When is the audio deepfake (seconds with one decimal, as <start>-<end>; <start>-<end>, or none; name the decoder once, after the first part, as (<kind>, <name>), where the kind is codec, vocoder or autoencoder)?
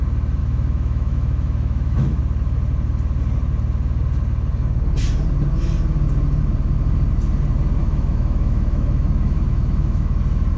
0.4-2.2 (autoencoder, DAC-VAE); 7.8-10.2